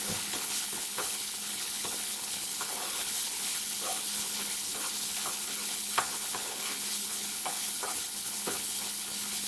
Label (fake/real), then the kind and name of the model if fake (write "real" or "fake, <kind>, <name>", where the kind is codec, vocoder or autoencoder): fake, codec, HILCodec